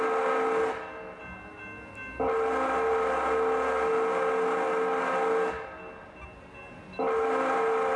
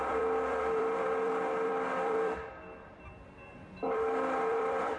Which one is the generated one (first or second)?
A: second